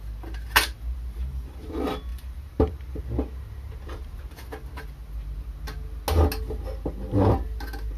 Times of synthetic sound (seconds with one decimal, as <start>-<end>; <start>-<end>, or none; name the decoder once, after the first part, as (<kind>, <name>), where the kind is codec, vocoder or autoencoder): 2.1-3.0 (vocoder, BigVGAN v2)